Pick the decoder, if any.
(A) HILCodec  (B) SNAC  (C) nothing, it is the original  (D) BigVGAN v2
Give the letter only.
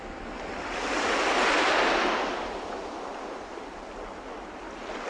C